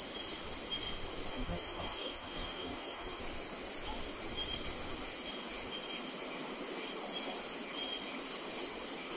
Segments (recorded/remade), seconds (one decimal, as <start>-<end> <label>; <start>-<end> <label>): 0.0-1.3 recorded; 1.3-3.2 remade; 3.2-9.2 recorded